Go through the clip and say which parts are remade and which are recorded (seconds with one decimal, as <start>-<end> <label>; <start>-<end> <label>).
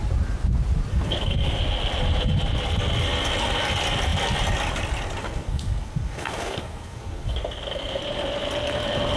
0.0-0.9 recorded; 0.9-1.6 remade; 1.6-5.2 recorded; 5.2-8.0 remade; 8.0-9.2 recorded